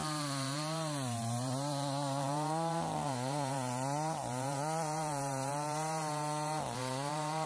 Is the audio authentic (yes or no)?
no